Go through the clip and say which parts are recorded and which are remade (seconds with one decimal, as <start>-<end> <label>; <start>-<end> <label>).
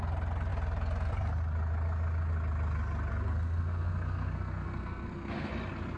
0.0-3.1 recorded; 3.1-5.5 remade; 5.5-6.0 recorded